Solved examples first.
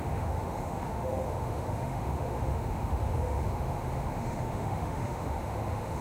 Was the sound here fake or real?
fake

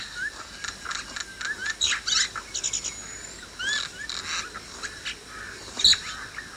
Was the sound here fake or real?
real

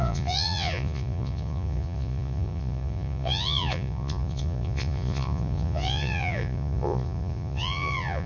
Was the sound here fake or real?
fake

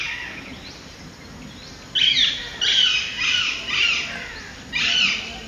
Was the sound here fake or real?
real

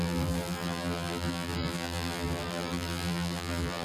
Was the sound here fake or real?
fake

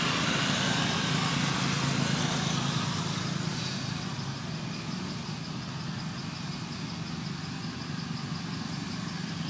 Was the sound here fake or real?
real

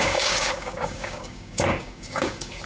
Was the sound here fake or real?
fake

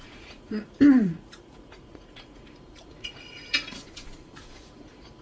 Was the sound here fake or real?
fake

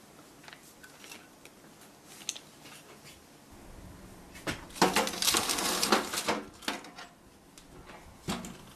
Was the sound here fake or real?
real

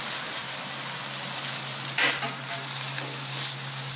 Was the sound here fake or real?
real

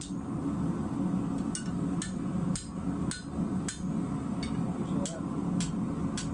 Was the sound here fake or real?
real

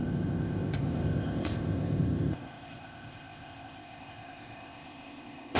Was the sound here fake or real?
fake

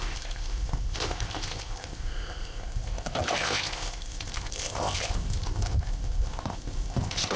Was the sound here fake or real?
fake